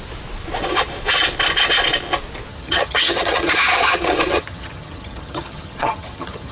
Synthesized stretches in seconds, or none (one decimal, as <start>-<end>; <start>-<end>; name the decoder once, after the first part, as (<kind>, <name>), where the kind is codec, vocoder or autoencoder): 2.5-6.5 (vocoder, HiFi-GAN)

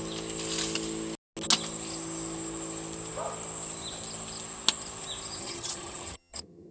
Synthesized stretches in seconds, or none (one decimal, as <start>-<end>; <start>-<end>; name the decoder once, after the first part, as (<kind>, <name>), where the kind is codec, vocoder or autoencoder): 5.4-6.7 (vocoder, HiFi-GAN)

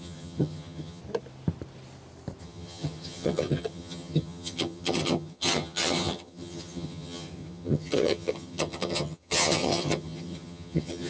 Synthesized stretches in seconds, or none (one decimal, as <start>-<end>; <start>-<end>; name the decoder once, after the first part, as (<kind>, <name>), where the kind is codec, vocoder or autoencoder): 0.0-1.0 (vocoder, HiFi-GAN); 2.4-11.1